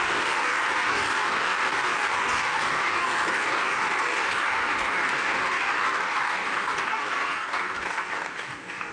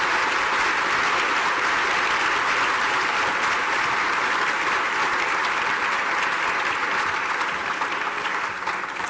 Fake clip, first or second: first